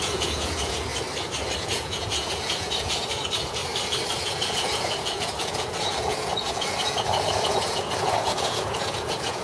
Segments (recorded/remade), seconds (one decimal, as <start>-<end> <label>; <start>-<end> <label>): 0.0-0.9 remade; 0.9-1.6 recorded; 1.6-3.6 remade; 3.6-4.2 recorded; 4.2-9.4 remade